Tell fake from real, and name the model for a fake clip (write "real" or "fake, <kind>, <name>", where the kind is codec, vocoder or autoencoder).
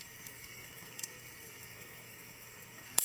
fake, codec, SNAC